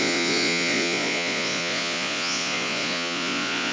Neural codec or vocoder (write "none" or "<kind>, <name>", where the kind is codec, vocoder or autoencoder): vocoder, Vocos